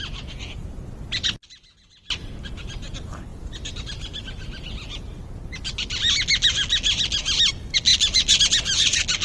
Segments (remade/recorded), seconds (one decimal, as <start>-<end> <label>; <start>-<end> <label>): 0.0-3.3 recorded; 3.3-4.2 remade; 4.2-7.9 recorded; 7.9-8.4 remade; 8.4-9.2 recorded